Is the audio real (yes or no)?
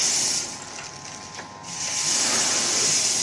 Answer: yes